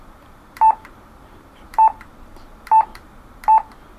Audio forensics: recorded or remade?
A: remade